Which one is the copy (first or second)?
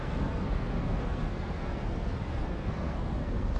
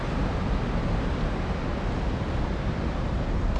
first